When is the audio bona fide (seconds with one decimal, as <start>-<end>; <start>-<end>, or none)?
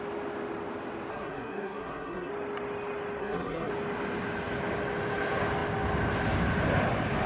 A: 0.0-1.1; 2.3-3.2; 3.7-7.3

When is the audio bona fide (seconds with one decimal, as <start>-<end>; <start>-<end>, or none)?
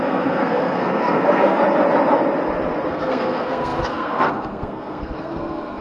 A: 1.6-2.9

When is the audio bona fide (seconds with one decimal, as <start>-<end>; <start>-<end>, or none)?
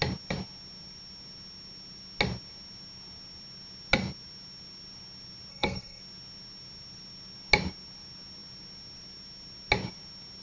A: 0.0-5.5; 6.0-10.4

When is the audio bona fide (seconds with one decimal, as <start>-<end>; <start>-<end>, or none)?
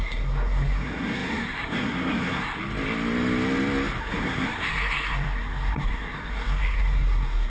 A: 2.6-4.0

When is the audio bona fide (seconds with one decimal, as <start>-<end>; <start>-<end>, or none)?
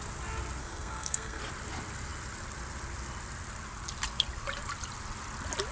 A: 0.0-0.6; 1.4-5.7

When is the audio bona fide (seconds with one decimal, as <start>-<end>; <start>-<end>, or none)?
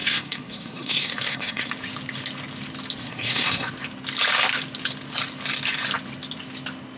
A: 1.7-3.0; 3.7-7.0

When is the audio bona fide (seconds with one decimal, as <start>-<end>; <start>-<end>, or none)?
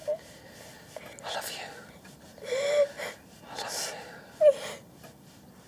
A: 0.0-5.7